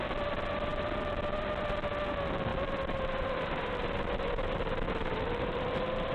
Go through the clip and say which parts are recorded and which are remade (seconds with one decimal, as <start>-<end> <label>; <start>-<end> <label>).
0.0-2.5 recorded; 2.5-6.1 remade